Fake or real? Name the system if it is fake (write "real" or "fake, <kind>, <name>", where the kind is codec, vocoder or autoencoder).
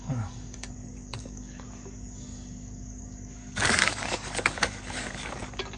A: fake, codec, DAC